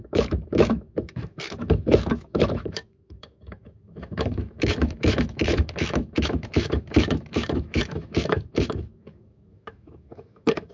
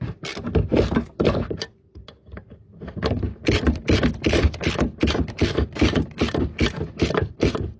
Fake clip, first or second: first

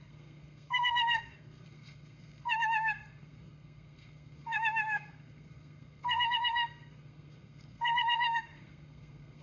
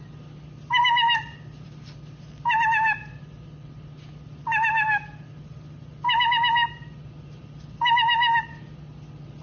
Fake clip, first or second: first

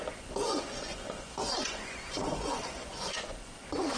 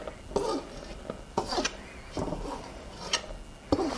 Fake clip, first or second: first